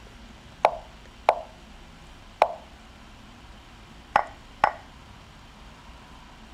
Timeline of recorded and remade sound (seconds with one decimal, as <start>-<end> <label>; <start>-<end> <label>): 0.0-2.0 recorded; 2.0-5.9 remade; 5.9-6.5 recorded